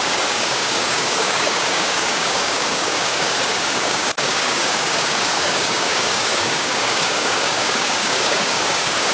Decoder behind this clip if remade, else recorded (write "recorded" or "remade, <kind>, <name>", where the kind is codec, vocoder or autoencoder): remade, codec, DAC